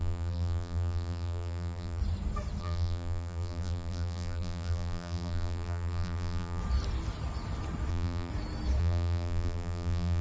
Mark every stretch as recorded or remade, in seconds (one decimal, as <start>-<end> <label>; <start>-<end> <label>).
0.0-2.0 remade; 2.0-2.6 recorded; 2.6-6.6 remade; 6.6-7.9 recorded; 7.9-8.3 remade; 8.3-8.8 recorded; 8.8-10.2 remade

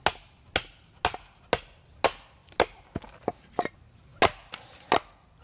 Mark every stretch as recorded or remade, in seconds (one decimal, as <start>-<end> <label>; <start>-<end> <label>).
0.0-5.4 recorded